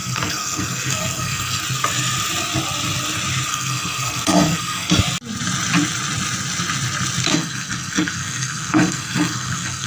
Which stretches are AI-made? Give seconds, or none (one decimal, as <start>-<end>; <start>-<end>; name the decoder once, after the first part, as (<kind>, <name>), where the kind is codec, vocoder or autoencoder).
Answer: 0.0-1.6 (codec, SNAC); 3.5-4.9; 7.3-9.9

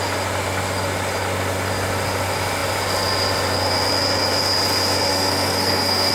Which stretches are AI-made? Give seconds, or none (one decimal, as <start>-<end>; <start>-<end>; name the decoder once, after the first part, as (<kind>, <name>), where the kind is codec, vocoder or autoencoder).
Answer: 5.1-6.1 (codec, SNAC)

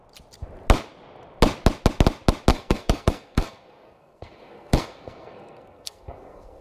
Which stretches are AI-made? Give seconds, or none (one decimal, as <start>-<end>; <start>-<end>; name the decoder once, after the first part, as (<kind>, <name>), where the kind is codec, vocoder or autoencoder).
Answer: 2.5-6.6 (codec, SNAC)

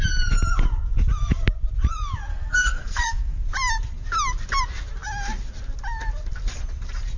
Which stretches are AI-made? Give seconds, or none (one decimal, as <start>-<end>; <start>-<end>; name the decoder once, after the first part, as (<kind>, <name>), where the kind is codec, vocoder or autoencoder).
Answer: 2.3-3.4 (codec, SNAC)

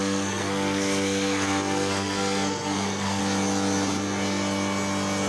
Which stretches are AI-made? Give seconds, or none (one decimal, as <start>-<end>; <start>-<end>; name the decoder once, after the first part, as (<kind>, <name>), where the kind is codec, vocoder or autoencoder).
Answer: 0.0-3.2 (codec, SNAC)

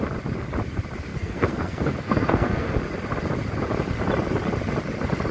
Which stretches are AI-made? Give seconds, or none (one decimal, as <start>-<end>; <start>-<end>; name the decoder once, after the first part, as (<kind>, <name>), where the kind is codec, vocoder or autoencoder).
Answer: 1.1-2.8 (codec, SNAC)